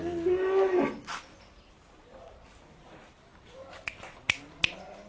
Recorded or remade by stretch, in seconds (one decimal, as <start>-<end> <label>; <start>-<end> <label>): 0.0-5.1 recorded

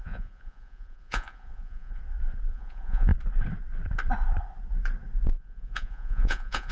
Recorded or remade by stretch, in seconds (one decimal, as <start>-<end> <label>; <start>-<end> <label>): 0.0-2.0 remade; 2.0-2.5 recorded; 2.5-3.1 remade; 3.1-5.4 recorded; 5.4-6.7 remade

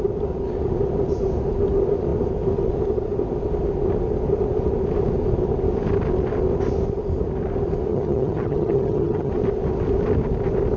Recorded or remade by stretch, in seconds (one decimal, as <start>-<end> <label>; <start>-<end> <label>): 0.0-7.9 recorded; 7.9-9.3 remade; 9.3-10.8 recorded

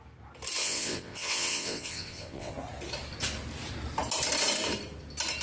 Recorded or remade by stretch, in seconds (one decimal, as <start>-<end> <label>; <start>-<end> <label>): 0.0-0.6 recorded; 0.6-2.5 remade; 2.5-5.4 recorded